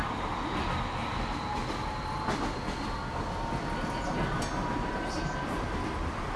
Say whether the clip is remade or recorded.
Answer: recorded